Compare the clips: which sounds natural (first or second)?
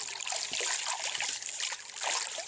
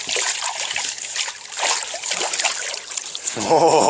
first